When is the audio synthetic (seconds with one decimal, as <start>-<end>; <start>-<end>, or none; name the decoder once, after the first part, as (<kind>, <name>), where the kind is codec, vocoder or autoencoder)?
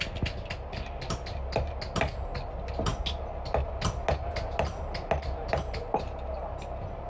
none